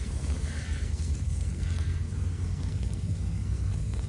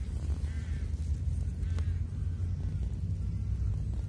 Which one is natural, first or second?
second